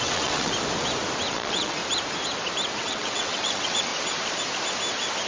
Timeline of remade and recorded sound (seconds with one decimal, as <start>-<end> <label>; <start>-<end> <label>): 0.0-0.5 remade; 0.5-1.3 recorded; 1.3-1.8 remade; 1.8-2.8 recorded; 2.8-3.9 remade; 3.9-5.3 recorded